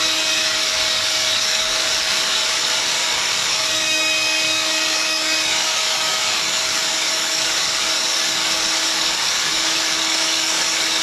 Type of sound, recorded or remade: remade